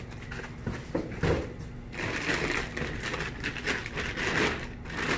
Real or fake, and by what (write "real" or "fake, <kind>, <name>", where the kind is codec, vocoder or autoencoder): real